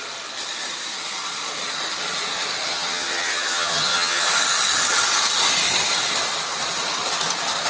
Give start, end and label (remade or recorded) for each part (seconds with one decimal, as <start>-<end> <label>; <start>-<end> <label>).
0.0-2.7 recorded; 2.7-4.3 remade; 4.3-7.7 recorded